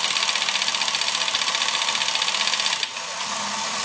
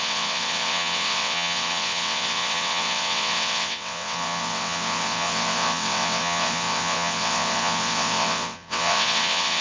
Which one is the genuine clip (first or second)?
first